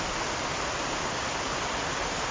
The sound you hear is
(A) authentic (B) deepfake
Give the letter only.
A